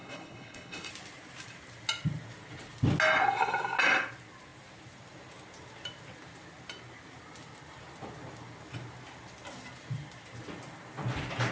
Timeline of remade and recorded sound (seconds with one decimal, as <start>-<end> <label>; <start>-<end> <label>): 0.0-0.9 remade; 0.9-11.5 recorded